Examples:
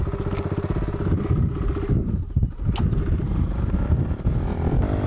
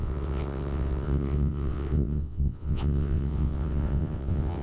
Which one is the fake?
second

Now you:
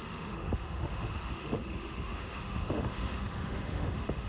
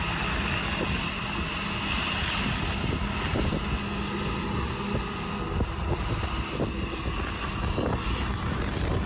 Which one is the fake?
first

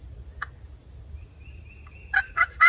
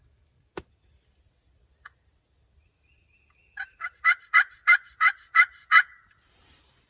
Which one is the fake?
second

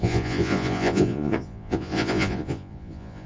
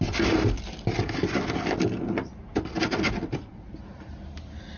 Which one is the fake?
first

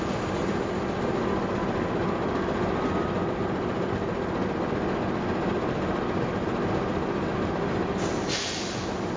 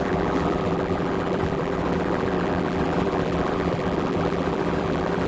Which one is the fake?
second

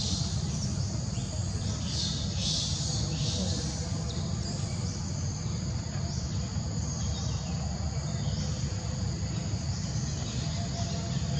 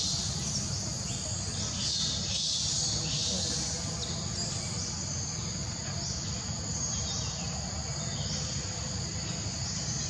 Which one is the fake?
first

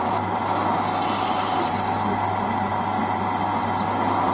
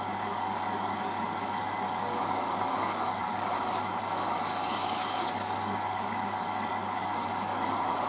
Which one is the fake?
second